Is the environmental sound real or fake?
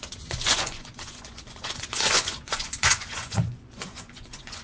fake